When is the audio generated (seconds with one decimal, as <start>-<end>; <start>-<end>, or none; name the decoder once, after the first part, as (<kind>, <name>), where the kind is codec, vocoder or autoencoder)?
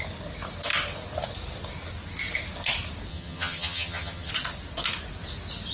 3.1-4.3 (vocoder, HiFi-GAN)